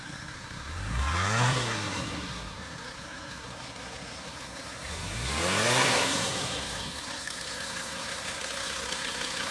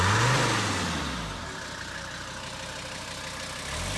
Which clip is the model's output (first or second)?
first